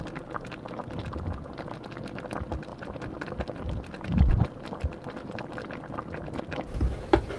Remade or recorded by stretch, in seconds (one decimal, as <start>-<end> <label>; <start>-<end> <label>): 0.0-2.7 recorded; 2.7-5.4 remade; 5.4-7.4 recorded